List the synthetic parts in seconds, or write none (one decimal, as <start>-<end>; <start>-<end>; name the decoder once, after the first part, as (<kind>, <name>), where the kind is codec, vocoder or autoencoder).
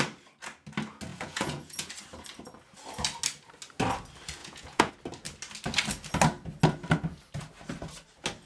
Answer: 1.1-1.9 (vocoder, Vocos); 4.4-4.9